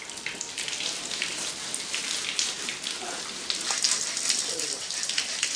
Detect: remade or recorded recorded